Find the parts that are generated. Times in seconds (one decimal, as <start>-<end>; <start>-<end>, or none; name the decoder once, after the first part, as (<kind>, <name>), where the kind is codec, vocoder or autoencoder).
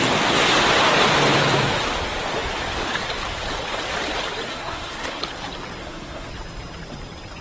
4.5-5.2 (codec, SNAC); 5.8-6.3